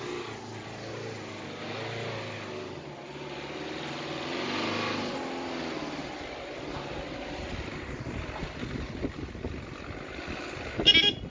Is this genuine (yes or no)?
yes